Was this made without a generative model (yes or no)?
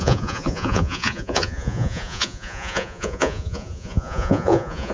no